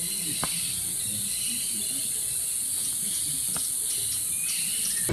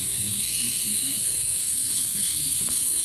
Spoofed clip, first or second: second